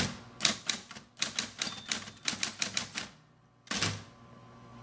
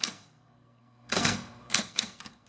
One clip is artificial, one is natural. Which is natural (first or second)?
first